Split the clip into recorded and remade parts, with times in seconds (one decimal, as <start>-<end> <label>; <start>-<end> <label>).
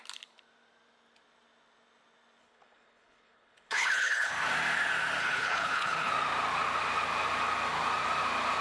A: 0.0-2.4 recorded; 2.4-4.3 remade; 4.3-5.2 recorded; 5.2-6.1 remade; 6.1-8.6 recorded